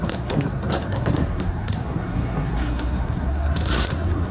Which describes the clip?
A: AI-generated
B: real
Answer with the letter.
A